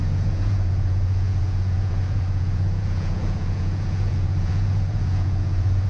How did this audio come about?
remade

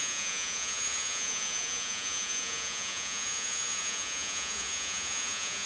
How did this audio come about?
remade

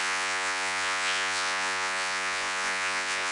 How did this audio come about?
remade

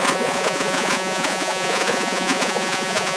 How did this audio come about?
remade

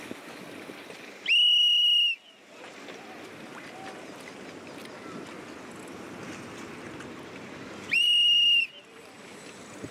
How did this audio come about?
recorded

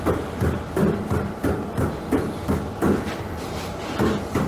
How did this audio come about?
recorded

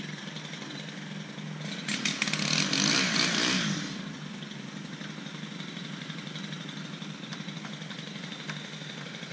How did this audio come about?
recorded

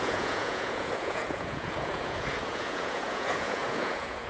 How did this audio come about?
remade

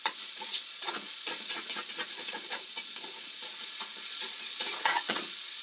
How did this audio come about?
remade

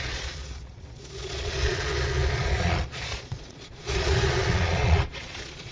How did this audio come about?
remade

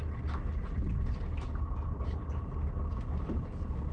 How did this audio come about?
recorded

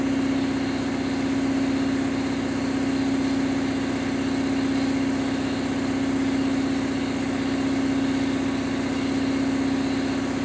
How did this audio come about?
recorded